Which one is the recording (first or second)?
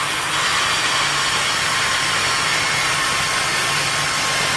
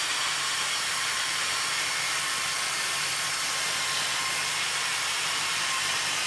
first